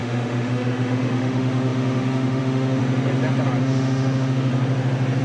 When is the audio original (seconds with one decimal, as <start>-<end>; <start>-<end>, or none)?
2.8-3.6; 4.5-5.2